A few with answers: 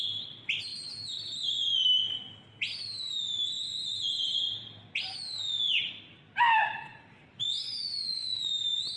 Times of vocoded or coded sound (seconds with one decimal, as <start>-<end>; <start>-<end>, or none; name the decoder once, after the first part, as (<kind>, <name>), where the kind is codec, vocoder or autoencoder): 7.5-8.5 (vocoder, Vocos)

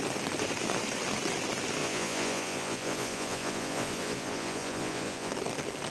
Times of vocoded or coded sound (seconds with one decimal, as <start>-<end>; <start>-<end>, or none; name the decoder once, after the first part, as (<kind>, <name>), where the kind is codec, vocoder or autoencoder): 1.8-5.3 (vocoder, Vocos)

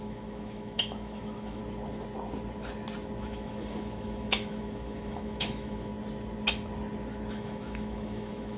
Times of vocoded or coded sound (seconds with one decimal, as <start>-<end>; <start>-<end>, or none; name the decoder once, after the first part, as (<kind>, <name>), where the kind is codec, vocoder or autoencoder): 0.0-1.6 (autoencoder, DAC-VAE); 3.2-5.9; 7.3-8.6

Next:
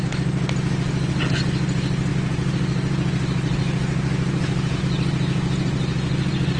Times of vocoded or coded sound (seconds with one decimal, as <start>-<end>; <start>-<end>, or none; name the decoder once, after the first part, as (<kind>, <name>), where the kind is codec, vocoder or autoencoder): none